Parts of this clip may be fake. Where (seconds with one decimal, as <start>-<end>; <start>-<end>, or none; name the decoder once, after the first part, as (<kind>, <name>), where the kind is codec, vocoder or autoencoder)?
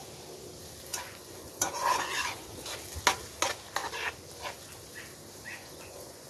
0.9-2.5 (vocoder, Vocos); 5.5-6.3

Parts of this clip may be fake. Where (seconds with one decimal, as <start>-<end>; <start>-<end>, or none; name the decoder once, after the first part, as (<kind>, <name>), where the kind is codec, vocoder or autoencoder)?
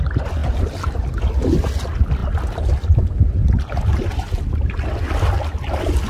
0.4-1.0 (vocoder, BigVGAN v2)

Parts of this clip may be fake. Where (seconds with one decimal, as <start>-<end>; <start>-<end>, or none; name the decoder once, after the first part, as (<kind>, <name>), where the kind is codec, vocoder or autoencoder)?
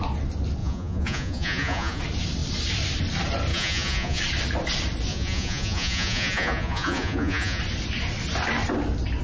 0.6-2.0 (vocoder, Vocos); 3.5-4.2; 5.1-7.6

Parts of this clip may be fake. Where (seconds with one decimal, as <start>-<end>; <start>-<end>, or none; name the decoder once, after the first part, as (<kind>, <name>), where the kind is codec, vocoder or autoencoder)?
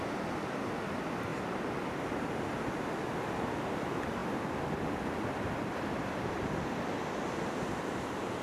1.3-2.0 (vocoder, BigVGAN v2)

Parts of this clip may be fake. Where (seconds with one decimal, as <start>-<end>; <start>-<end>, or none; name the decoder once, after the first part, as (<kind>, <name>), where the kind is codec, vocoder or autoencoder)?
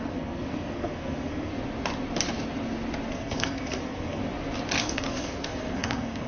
0.0-1.5 (codec, SNAC); 3.1-4.2; 4.8-6.3